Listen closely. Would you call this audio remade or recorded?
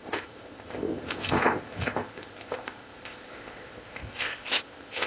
remade